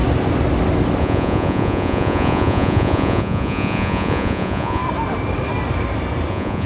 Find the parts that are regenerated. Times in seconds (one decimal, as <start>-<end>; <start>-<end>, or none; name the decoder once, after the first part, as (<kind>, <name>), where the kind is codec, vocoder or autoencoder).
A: 1.0-4.8 (vocoder, Vocos); 6.3-6.7